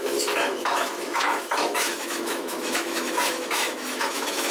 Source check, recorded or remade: remade